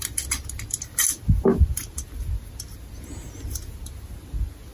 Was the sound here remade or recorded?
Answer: recorded